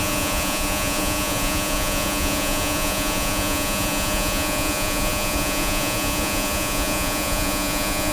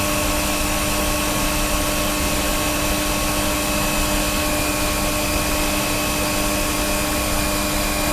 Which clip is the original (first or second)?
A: second